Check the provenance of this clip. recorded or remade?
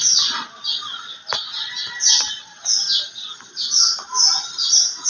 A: recorded